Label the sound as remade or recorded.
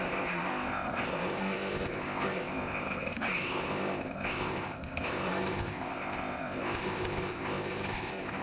remade